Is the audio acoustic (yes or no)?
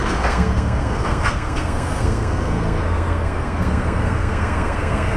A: no